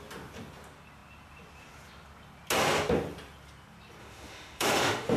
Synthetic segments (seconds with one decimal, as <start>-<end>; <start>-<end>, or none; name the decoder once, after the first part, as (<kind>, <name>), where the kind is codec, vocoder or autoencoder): 4.0-5.2 (autoencoder, DAC-VAE)